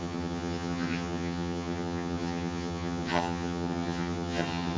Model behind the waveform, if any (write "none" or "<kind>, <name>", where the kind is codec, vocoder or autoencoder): vocoder, HiFi-GAN